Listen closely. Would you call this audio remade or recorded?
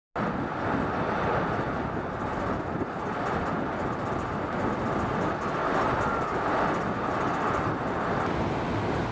recorded